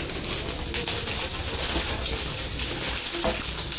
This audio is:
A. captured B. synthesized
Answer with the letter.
A